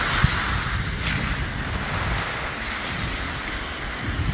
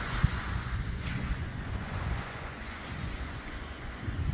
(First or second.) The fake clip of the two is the second